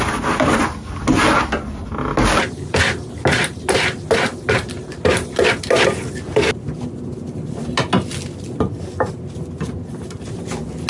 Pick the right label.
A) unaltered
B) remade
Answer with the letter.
A